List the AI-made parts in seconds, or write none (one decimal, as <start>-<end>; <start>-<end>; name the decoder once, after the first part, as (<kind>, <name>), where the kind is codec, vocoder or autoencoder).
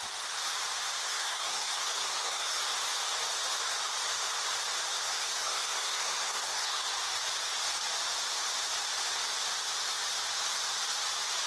1.0-2.6 (codec, SNAC); 4.9-6.9